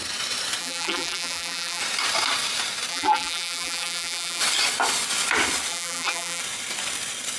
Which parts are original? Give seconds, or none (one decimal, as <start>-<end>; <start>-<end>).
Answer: 0.0-0.6; 1.8-2.9; 4.4-5.7; 6.4-7.4